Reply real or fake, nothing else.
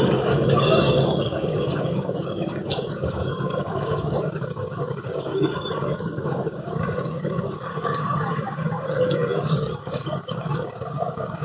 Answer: fake